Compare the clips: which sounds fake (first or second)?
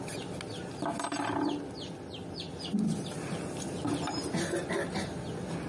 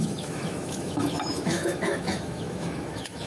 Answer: second